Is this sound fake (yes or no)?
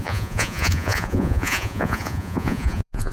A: yes